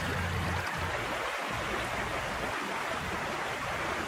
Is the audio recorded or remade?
recorded